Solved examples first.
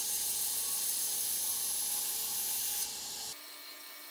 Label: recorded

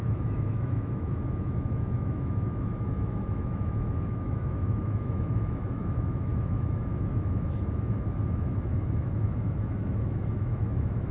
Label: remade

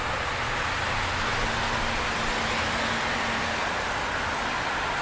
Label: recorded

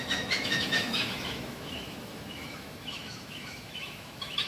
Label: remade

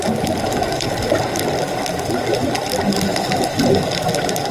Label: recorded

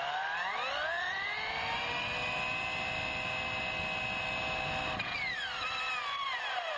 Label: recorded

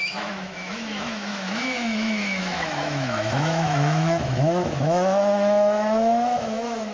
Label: remade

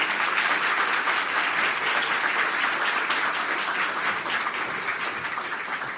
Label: recorded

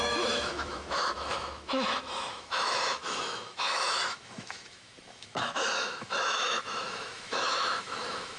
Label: remade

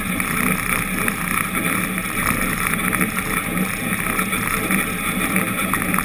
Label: recorded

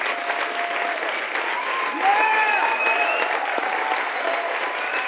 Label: recorded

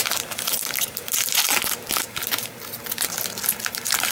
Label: recorded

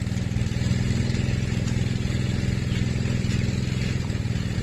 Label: recorded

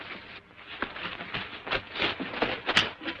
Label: recorded